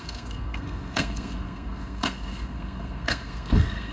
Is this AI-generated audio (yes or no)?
yes